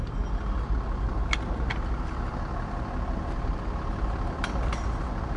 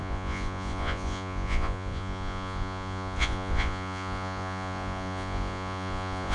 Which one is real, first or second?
first